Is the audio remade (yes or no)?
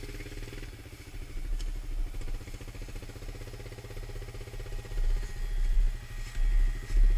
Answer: no